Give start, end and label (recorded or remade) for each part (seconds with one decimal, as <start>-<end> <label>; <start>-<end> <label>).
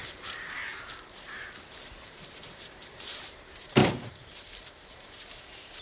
0.0-5.8 remade